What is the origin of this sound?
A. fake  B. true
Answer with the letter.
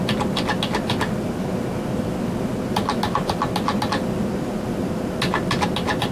B